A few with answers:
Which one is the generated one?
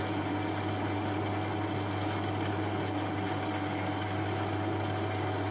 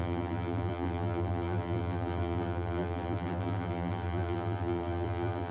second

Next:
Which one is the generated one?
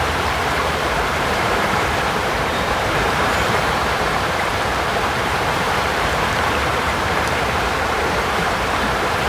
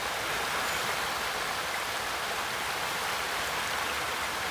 first